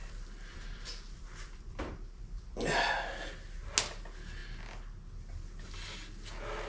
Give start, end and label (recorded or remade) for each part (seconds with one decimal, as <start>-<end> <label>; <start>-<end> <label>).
0.0-2.2 remade; 2.2-6.7 recorded